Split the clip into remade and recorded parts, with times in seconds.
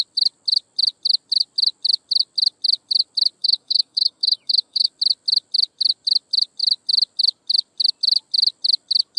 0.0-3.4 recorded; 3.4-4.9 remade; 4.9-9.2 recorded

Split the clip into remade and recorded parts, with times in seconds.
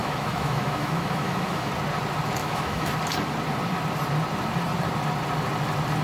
0.0-1.7 remade; 1.7-2.4 recorded; 2.4-2.9 remade; 2.9-6.0 recorded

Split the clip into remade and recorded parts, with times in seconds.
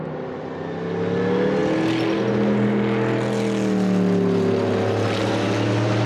0.0-6.1 recorded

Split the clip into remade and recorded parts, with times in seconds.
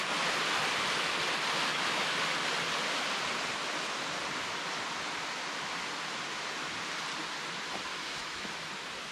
0.0-1.7 recorded; 1.7-2.2 remade; 2.2-7.9 recorded; 7.9-8.5 remade; 8.5-9.1 recorded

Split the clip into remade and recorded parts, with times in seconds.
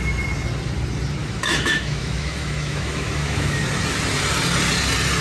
0.0-1.2 recorded; 1.2-3.6 remade; 3.6-5.2 recorded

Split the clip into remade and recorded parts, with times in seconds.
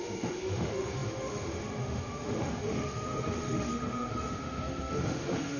0.0-5.6 remade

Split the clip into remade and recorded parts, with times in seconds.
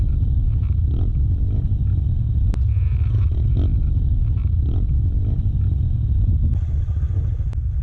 0.0-7.8 recorded